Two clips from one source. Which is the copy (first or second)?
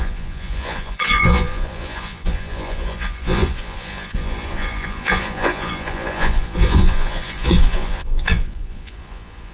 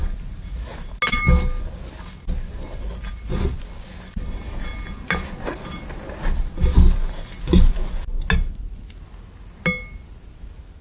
first